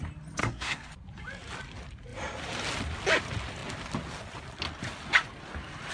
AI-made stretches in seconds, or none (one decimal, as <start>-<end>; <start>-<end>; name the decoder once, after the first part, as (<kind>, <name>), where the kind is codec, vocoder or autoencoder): 0.4-0.9 (codec, SNAC)